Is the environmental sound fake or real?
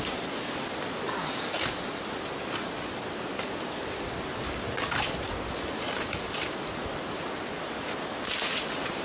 real